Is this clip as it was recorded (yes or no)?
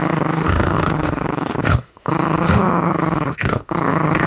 no